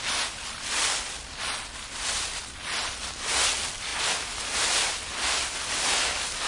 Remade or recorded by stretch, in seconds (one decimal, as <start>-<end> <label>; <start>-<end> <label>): 0.0-6.5 recorded